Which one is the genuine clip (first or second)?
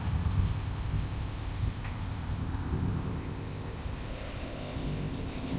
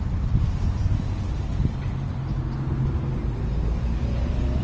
second